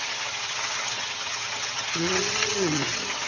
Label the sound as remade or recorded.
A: remade